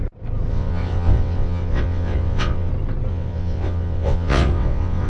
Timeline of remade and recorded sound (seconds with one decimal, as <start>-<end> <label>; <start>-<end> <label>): 0.0-0.5 recorded; 0.5-2.7 remade; 2.7-3.1 recorded; 3.1-5.1 remade